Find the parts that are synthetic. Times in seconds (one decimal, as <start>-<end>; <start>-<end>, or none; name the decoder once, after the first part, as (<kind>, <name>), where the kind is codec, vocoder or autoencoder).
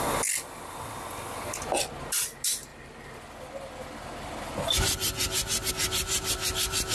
none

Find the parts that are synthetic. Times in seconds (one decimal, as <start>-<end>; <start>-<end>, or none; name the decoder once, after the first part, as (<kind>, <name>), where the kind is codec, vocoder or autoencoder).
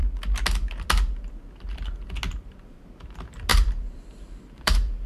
3.5-5.1 (vocoder, BigVGAN v2)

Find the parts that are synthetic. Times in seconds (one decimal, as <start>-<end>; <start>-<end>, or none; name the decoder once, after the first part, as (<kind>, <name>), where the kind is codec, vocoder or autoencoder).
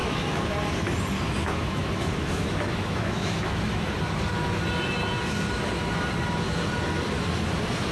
0.0-0.5 (autoencoder, DAC-VAE); 1.4-3.9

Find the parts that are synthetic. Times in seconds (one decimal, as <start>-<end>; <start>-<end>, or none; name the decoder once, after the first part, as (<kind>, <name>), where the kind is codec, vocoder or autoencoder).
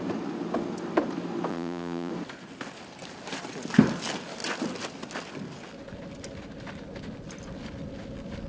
1.5-2.1 (vocoder, Vocos)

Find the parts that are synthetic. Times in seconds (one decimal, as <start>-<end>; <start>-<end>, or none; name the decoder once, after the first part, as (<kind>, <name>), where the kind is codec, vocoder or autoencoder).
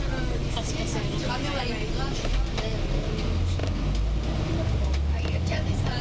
none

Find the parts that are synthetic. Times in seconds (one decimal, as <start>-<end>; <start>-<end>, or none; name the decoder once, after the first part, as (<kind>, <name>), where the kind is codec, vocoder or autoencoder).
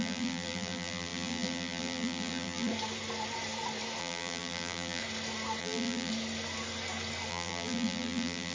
0.0-2.7 (vocoder, BigVGAN v2); 4.0-5.0; 5.6-6.1; 7.3-8.5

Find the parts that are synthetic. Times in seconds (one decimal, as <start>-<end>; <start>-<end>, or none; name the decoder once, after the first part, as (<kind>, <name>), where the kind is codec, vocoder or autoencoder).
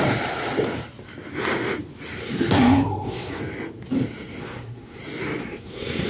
2.2-3.4 (codec, SNAC); 4.4-5.0; 5.4-6.1